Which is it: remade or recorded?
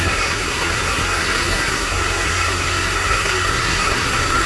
remade